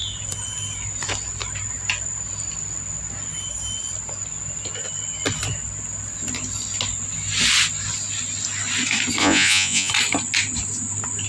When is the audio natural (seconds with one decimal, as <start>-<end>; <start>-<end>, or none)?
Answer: 0.0-9.2; 9.9-11.3